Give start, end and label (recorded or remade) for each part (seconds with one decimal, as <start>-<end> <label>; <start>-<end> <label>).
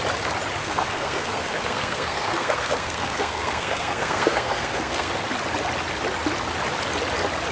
0.0-0.6 recorded; 0.6-5.1 remade; 5.1-7.5 recorded